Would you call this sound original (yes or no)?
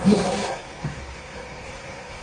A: no